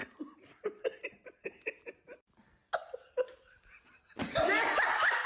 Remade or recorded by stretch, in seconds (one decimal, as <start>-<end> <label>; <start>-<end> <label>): 0.0-5.3 recorded